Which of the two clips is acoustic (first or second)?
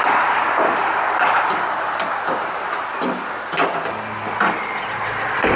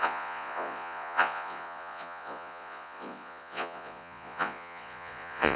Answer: first